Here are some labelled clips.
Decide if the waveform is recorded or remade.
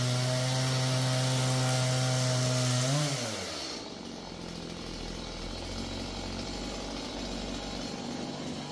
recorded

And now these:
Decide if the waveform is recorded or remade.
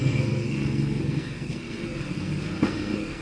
remade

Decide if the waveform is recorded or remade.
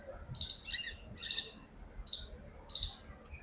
recorded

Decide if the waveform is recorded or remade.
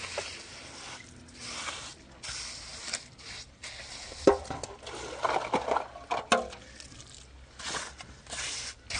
recorded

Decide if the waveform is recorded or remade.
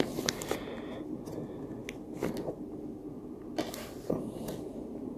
recorded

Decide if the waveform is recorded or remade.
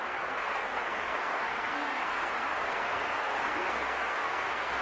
remade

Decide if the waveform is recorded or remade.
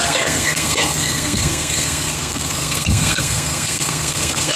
remade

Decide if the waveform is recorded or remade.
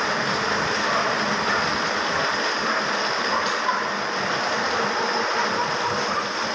recorded